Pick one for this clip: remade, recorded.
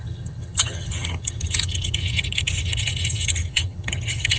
remade